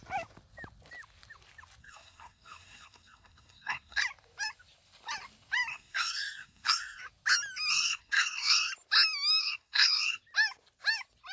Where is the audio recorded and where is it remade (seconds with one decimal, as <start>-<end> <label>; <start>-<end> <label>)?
0.0-1.8 recorded; 1.8-4.0 remade; 4.0-5.7 recorded; 5.7-7.0 remade; 7.0-7.7 recorded; 7.7-8.7 remade; 8.7-9.4 recorded; 9.4-10.2 remade; 10.2-11.3 recorded